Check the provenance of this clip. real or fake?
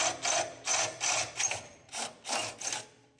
real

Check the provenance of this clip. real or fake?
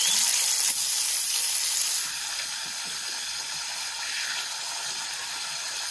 real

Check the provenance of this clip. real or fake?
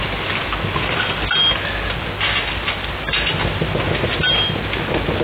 real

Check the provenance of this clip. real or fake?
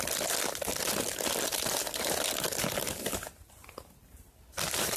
real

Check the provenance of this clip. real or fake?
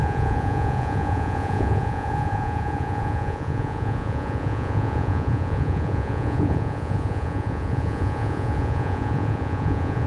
fake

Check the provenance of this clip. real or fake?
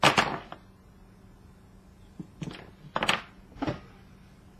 real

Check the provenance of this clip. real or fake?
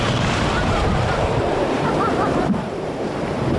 fake